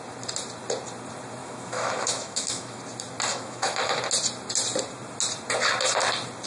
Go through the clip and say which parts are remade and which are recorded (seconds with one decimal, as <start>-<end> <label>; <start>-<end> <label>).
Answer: 0.0-1.4 recorded; 1.4-2.8 remade; 2.8-3.3 recorded; 3.3-4.0 remade; 4.0-6.5 recorded